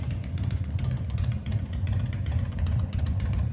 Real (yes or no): no